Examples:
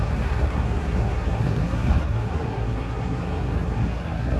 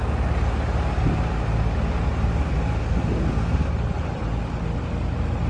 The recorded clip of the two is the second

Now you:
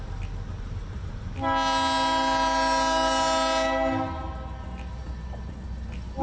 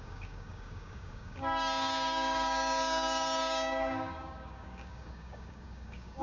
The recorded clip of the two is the first